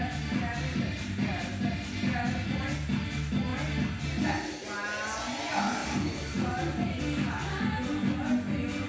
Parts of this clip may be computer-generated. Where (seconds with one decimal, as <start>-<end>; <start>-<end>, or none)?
0.7-1.3; 5.8-7.0